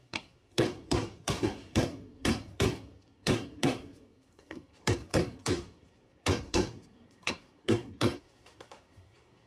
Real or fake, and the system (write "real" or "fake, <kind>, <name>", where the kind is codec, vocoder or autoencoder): fake, codec, SNAC